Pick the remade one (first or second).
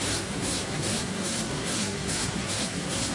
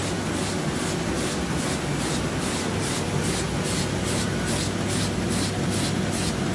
first